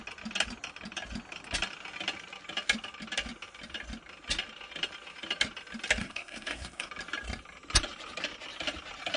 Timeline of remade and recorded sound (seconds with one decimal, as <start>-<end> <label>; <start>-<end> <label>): 0.0-6.0 recorded; 6.0-6.9 remade; 6.9-9.2 recorded